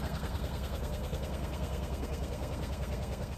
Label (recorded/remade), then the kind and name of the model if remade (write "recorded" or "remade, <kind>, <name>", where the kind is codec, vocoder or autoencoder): remade, codec, SNAC